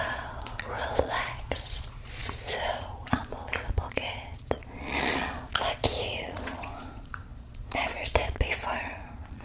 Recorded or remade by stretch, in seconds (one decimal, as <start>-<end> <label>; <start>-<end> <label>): 0.0-9.4 remade